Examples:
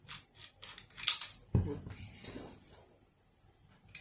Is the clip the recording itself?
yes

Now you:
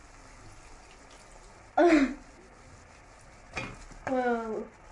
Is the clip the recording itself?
yes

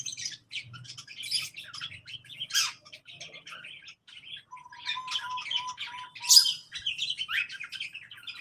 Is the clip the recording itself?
yes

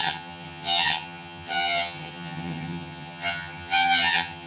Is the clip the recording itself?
no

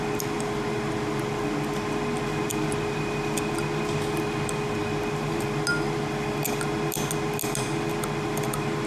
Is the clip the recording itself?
yes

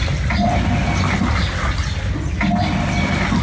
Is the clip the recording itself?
yes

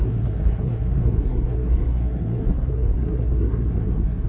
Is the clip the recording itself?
no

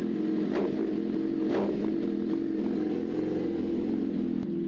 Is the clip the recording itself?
yes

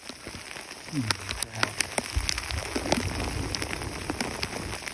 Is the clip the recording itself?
yes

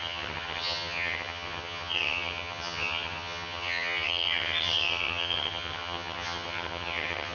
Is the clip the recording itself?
no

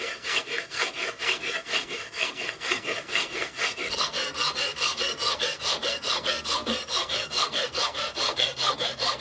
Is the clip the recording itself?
no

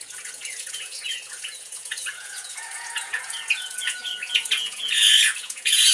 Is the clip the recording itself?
no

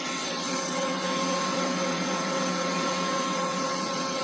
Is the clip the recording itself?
no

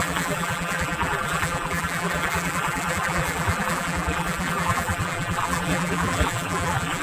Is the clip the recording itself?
no